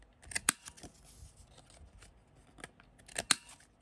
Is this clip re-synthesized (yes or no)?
no